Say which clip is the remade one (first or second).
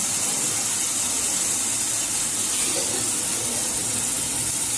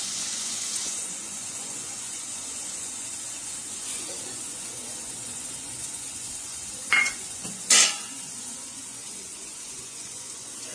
second